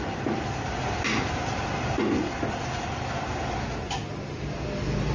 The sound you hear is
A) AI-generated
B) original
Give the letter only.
B